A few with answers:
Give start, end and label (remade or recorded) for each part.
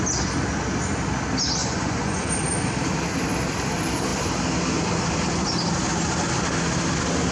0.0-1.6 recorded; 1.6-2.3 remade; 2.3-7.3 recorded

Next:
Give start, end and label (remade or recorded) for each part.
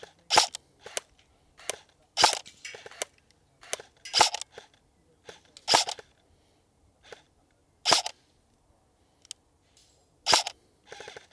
0.0-11.3 recorded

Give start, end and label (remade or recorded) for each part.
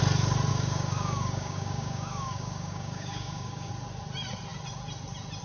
0.0-0.5 recorded; 0.5-3.7 remade; 3.7-5.4 recorded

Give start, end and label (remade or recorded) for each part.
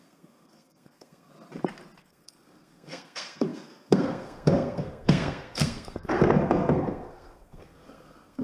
0.0-1.3 remade; 1.3-2.0 recorded; 2.0-8.4 remade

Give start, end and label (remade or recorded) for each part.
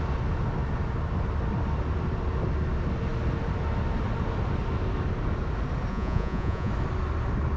0.0-5.9 recorded; 5.9-6.7 remade; 6.7-7.6 recorded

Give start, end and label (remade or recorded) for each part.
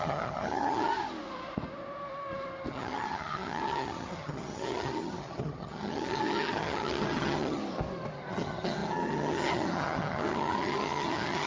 0.0-0.9 remade; 0.9-2.7 recorded; 2.7-7.6 remade; 7.6-8.3 recorded; 8.3-11.5 remade